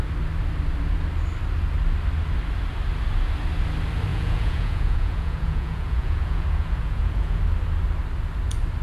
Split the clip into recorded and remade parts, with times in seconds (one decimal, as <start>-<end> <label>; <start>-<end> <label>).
0.0-4.1 recorded; 4.1-7.4 remade; 7.4-8.8 recorded